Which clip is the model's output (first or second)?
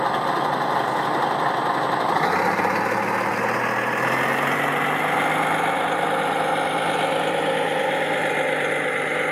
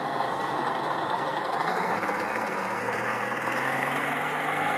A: second